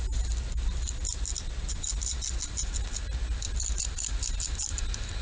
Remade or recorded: recorded